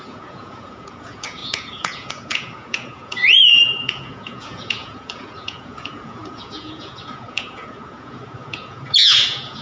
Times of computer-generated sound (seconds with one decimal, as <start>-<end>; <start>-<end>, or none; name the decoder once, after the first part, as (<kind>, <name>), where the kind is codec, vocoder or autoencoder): 0.0-9.6 (vocoder, Vocos)